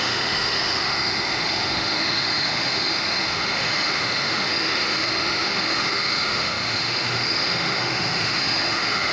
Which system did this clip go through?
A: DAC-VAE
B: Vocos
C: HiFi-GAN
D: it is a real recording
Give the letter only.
A